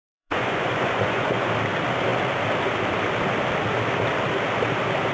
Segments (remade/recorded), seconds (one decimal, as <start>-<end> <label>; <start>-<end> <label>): 0.0-1.5 remade; 1.5-5.1 recorded